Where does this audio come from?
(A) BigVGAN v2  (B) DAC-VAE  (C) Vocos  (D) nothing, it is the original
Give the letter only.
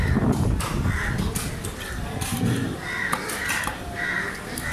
D